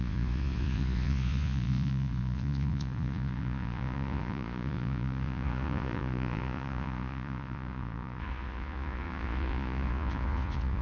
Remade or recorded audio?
remade